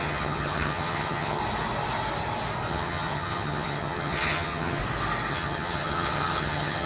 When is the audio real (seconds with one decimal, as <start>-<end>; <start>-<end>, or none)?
1.4-2.7; 4.8-5.3